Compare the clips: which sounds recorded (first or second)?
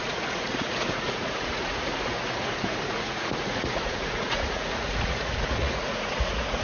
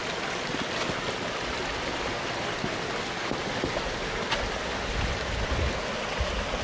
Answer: second